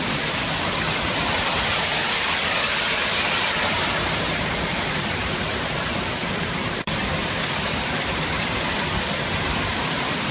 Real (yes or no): no